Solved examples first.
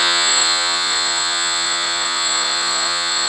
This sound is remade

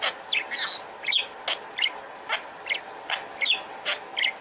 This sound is recorded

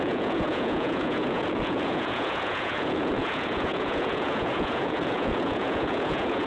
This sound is remade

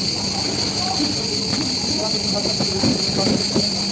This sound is recorded